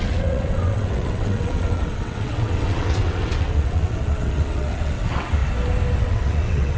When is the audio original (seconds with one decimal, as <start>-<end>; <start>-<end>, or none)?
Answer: 5.4-6.0